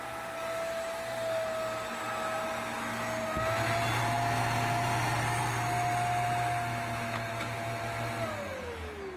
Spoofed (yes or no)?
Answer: no